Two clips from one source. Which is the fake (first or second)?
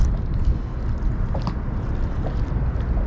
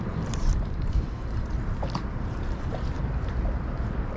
second